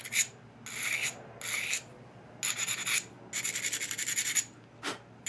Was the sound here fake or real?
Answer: real